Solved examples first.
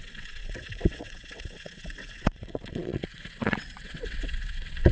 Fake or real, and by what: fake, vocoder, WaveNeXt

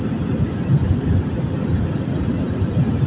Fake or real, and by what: real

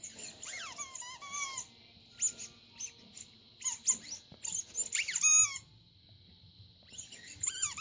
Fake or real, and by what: real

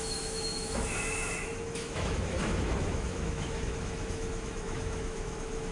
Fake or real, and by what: fake, autoencoder, DAC-VAE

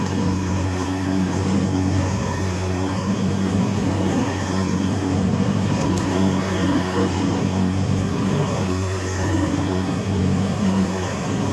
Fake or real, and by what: fake, codec, SNAC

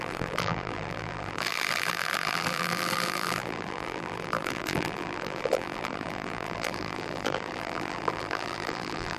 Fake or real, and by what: fake, vocoder, BigVGAN v2